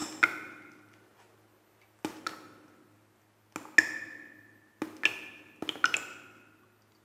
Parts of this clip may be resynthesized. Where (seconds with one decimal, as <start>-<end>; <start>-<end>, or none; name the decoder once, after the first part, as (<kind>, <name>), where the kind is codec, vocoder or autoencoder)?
none